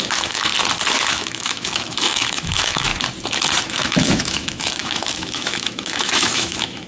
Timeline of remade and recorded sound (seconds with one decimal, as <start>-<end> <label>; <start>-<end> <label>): 0.0-0.5 remade; 0.5-1.1 recorded; 1.1-2.9 remade; 2.9-3.7 recorded; 3.7-6.9 remade